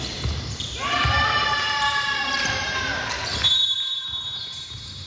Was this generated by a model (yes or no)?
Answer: yes